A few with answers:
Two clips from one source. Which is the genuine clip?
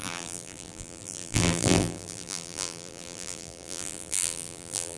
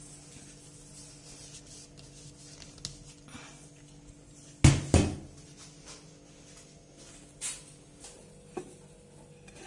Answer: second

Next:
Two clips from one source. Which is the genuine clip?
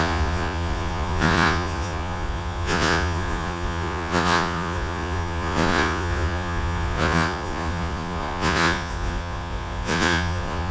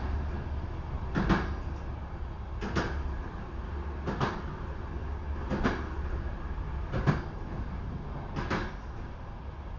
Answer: second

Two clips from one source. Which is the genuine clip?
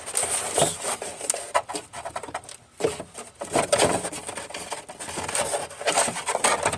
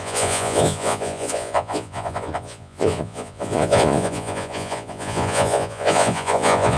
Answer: first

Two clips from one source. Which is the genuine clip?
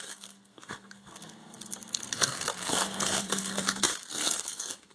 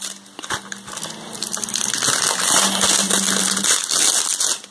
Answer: second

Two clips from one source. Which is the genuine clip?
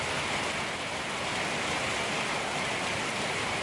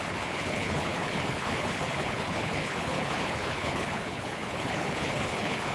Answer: first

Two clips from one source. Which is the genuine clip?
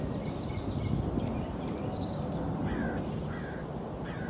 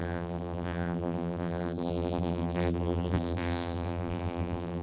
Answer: first